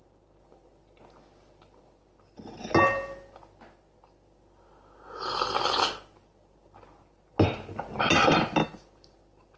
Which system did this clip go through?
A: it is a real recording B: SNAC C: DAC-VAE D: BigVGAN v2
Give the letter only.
A